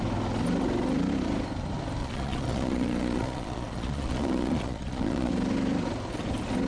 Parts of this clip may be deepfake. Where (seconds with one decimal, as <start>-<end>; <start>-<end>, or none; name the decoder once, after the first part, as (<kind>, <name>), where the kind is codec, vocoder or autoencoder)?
2.0-5.3 (vocoder, Vocos)